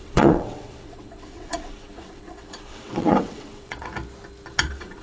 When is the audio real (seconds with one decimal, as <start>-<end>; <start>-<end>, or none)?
3.9-4.6